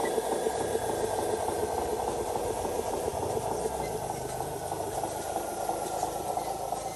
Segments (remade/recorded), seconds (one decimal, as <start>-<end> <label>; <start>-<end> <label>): 0.0-7.0 recorded